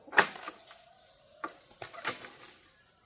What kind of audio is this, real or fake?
real